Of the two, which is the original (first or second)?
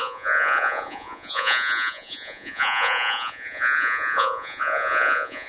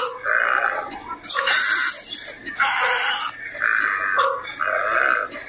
second